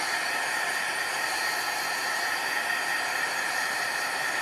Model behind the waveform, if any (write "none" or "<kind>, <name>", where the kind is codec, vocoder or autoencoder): vocoder, BigVGAN v2